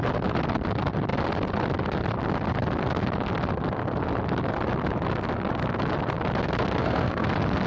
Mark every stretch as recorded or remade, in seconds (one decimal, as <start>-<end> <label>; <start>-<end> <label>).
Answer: 0.0-6.8 recorded; 6.8-7.3 remade; 7.3-7.7 recorded